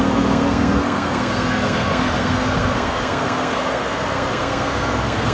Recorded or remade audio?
remade